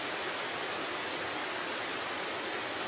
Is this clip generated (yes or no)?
no